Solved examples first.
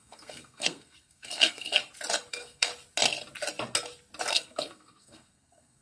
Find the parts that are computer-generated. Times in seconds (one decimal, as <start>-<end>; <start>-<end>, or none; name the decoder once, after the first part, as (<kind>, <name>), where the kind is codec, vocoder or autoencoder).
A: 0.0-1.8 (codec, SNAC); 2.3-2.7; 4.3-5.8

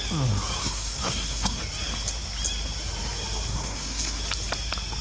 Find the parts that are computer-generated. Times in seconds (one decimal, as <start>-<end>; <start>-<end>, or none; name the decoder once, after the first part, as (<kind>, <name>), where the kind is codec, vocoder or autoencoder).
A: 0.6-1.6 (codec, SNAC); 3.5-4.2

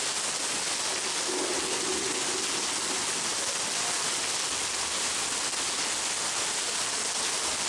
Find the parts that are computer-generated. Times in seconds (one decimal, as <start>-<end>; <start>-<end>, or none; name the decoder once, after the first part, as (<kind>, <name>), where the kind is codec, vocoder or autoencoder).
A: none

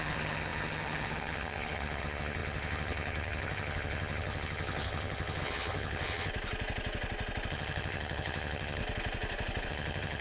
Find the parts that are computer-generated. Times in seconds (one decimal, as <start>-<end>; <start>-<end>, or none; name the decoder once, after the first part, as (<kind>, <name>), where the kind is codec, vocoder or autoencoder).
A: 0.0-6.3 (vocoder, HiFi-GAN); 7.5-8.8; 9.7-10.2

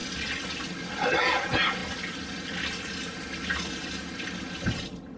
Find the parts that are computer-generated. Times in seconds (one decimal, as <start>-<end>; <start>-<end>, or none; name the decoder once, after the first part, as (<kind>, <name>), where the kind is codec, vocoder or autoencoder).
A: 1.2-1.8 (vocoder, Vocos)

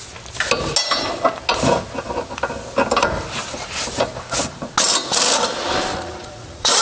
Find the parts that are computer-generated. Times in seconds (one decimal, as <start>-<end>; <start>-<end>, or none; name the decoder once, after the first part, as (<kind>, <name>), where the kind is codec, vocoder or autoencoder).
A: 5.9-6.8 (vocoder, Vocos)

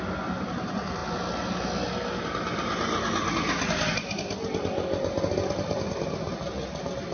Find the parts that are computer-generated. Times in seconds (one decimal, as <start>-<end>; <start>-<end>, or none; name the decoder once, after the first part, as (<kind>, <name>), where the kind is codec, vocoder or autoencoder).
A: none

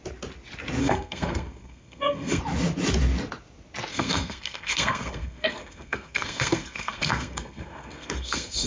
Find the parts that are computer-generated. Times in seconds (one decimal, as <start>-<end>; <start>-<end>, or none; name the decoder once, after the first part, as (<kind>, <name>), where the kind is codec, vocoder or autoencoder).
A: 0.8-2.4 (codec, SNAC); 3.9-8.7